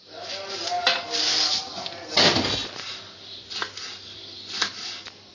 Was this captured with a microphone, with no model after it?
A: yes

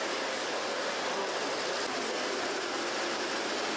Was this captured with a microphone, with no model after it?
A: yes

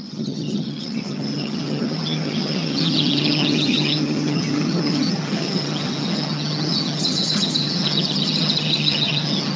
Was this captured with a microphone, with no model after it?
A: no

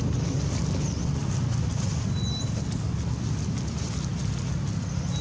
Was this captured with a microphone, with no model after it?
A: yes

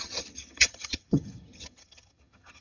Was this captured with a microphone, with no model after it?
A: no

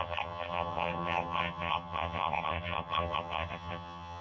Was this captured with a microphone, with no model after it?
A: no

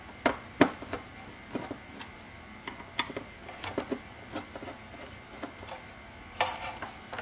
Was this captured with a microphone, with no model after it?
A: yes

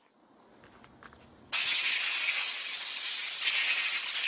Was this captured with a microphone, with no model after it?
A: yes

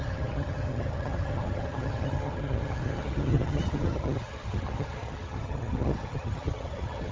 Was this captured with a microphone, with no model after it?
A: no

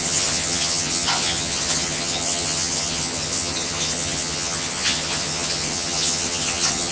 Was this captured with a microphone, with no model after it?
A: no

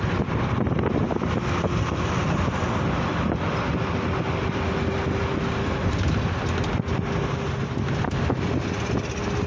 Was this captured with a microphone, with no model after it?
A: yes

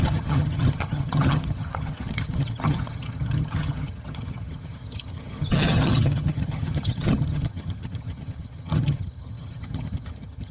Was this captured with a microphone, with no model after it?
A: no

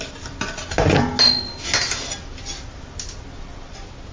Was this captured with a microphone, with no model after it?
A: yes